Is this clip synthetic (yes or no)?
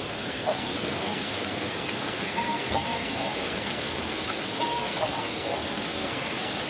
yes